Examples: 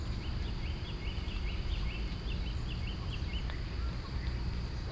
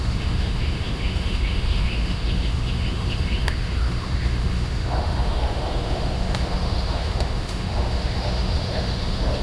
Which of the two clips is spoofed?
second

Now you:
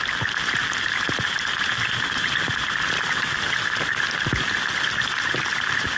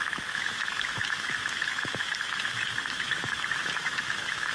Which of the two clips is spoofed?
second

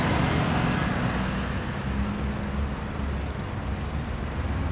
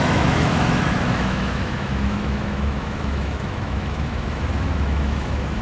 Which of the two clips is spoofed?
second